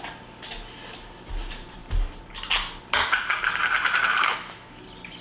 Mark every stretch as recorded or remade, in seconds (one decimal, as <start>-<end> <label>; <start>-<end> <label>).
0.0-4.0 recorded; 4.0-4.8 remade; 4.8-5.2 recorded